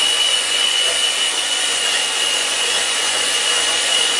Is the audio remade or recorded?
remade